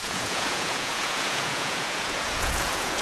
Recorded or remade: remade